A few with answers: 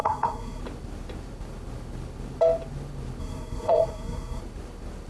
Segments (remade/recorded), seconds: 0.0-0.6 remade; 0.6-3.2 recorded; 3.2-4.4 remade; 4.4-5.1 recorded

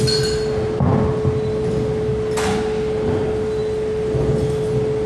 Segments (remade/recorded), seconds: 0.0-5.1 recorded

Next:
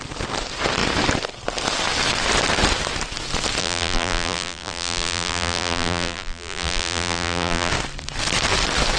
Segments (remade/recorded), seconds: 0.0-3.6 recorded; 3.6-7.7 remade; 7.7-9.0 recorded

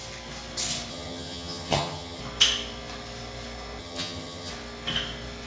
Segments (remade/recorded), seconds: 0.0-0.9 recorded; 0.9-2.2 remade; 2.2-3.8 recorded; 3.8-4.5 remade; 4.5-5.5 recorded

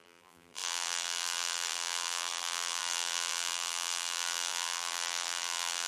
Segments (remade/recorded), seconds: 0.0-5.9 remade

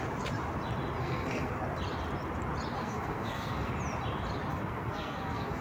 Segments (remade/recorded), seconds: 0.0-1.0 recorded; 1.0-1.5 remade; 1.5-2.8 recorded; 2.8-3.7 remade; 3.7-4.5 recorded; 4.5-5.6 remade

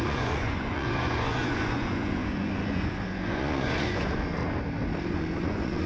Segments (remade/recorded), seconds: 0.0-4.4 remade; 4.4-5.1 recorded; 5.1-5.9 remade

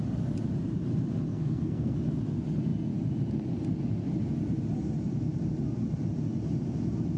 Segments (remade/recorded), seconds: 0.0-1.3 recorded; 1.3-2.0 remade; 2.0-7.2 recorded